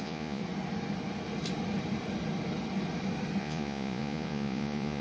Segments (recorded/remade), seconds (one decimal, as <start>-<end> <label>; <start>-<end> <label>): 0.0-0.4 remade; 0.4-3.4 recorded; 3.4-5.0 remade